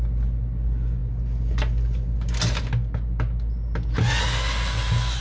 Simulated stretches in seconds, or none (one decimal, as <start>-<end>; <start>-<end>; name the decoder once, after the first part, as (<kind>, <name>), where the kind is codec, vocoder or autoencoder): none